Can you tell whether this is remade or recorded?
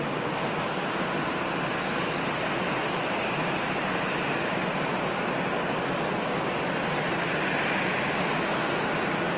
recorded